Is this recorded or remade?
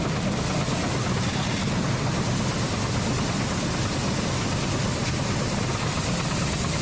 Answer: recorded